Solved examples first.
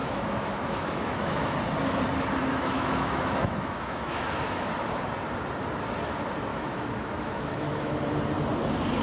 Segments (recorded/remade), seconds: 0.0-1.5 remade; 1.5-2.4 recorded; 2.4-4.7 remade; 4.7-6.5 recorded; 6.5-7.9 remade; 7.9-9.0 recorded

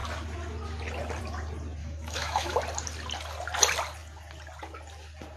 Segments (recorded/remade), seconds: 0.0-1.8 recorded; 1.8-2.6 remade; 2.6-5.4 recorded

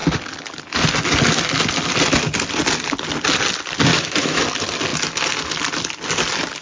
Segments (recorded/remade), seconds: 0.0-3.9 recorded; 3.9-4.4 remade; 4.4-6.6 recorded